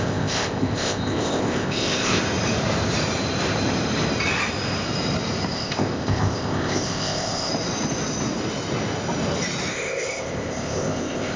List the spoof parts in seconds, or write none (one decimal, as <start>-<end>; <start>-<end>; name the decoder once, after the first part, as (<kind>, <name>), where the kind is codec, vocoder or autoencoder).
0.0-2.2 (codec, ZipCodec); 5.5-7.5; 9.7-11.4